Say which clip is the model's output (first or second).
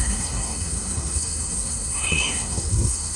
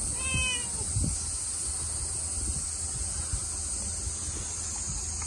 first